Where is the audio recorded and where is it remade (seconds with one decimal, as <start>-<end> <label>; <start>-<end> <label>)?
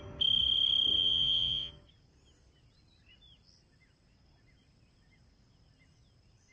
0.0-1.0 recorded; 1.0-1.7 remade; 1.7-6.5 recorded